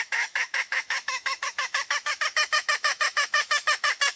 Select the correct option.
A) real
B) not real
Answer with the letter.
B